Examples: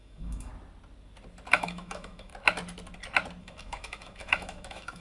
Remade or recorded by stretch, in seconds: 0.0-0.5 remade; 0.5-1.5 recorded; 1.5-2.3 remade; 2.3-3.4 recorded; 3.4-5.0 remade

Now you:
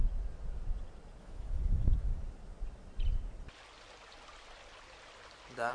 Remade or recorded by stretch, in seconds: 0.0-1.2 recorded; 1.2-2.1 remade; 2.1-5.7 recorded

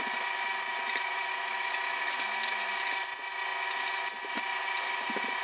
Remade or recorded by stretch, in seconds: 0.0-1.3 recorded; 1.3-2.0 remade; 2.0-5.4 recorded